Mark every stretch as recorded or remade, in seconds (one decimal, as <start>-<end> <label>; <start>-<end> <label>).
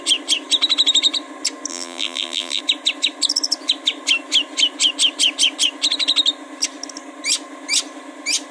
0.0-1.7 recorded; 1.7-2.6 remade; 2.6-8.5 recorded